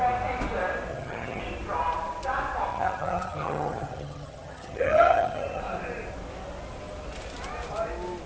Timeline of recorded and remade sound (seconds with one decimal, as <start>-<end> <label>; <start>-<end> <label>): 0.0-0.9 recorded; 0.9-1.4 remade; 1.4-2.7 recorded; 2.7-5.6 remade; 5.6-8.3 recorded